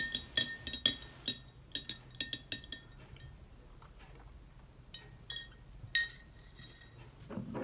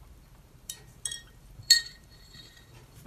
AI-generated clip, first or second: second